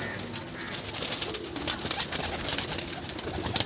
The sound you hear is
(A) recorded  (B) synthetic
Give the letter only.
A